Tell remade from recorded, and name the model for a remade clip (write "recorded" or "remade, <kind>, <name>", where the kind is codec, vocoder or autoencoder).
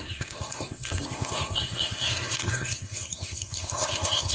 remade, codec, SNAC